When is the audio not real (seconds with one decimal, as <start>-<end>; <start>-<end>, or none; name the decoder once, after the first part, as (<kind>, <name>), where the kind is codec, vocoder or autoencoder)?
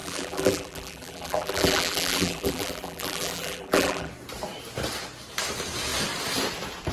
0.0-4.1 (vocoder, BigVGAN v2)